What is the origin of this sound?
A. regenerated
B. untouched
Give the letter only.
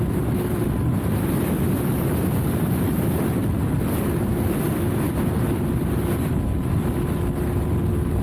B